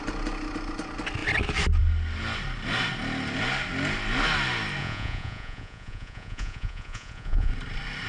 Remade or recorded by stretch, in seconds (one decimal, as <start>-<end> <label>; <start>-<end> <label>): 0.0-4.8 recorded; 4.8-7.5 remade; 7.5-8.1 recorded